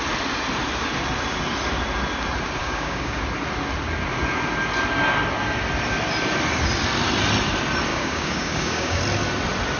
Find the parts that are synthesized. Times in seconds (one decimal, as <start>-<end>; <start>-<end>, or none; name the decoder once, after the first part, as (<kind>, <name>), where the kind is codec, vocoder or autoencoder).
2.6-3.2 (codec, DAC); 7.9-9.0